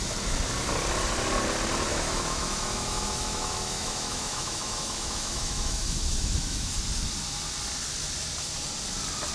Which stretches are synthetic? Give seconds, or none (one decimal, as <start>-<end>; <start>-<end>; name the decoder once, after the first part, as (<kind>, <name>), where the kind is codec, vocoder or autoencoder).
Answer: 1.9-6.7 (autoencoder, DAC-VAE)